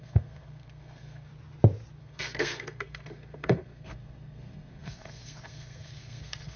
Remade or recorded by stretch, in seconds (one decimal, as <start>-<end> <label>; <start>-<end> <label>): 0.0-1.3 remade; 1.3-2.0 recorded; 2.0-6.6 remade